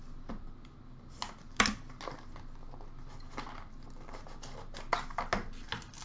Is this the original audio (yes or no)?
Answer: yes